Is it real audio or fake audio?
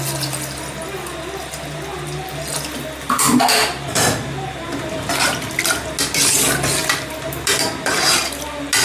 real